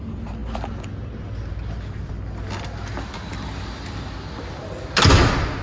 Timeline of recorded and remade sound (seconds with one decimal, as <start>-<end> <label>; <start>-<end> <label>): 0.0-5.6 recorded